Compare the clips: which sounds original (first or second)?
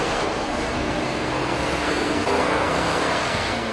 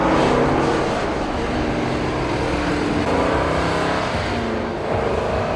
second